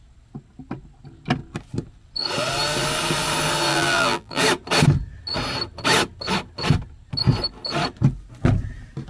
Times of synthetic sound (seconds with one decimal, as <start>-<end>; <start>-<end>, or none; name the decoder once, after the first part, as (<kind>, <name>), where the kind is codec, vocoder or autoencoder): 3.7-4.4 (vocoder, BigVGAN v2)